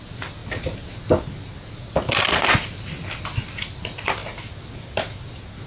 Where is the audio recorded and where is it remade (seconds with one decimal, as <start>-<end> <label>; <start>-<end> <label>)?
0.0-5.7 recorded